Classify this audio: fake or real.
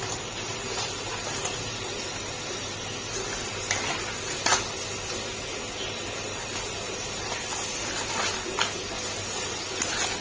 real